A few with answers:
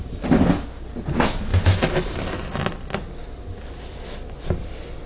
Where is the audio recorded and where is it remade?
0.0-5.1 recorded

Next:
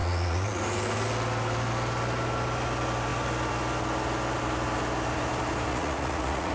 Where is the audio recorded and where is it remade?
0.0-0.6 remade; 0.6-5.7 recorded; 5.7-6.5 remade